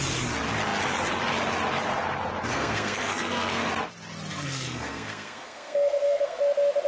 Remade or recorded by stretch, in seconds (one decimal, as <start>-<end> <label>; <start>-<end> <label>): 0.0-2.5 recorded; 2.5-3.7 remade; 3.7-4.3 recorded; 4.3-6.4 remade; 6.4-6.9 recorded